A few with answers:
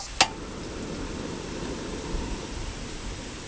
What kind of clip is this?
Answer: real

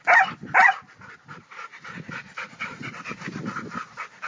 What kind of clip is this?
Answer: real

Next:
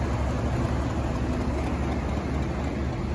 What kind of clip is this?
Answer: real